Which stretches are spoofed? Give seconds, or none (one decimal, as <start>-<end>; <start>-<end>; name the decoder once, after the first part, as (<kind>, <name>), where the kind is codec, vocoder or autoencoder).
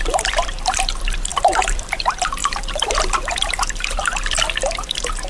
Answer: 0.0-5.3 (vocoder, BigVGAN v2)